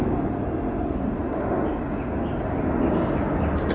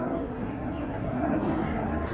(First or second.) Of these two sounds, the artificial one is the second